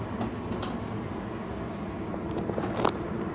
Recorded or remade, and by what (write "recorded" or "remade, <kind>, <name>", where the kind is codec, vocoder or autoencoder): recorded